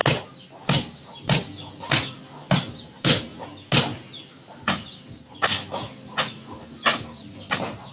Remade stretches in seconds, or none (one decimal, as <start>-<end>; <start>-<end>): none